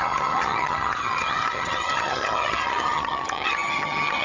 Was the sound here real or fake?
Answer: fake